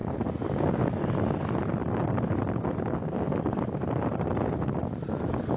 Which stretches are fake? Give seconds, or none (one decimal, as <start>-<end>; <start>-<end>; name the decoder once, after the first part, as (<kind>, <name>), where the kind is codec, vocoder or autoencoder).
none